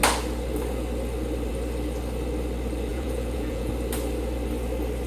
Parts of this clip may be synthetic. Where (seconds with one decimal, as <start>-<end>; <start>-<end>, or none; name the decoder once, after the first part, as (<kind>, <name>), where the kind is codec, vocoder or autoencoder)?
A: 2.9-3.7 (vocoder, Vocos)